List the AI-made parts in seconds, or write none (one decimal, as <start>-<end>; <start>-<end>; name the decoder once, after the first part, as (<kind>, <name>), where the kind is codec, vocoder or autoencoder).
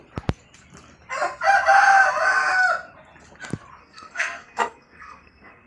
3.8-5.7 (codec, SNAC)